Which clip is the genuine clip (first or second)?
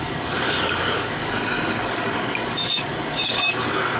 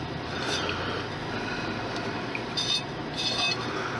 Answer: second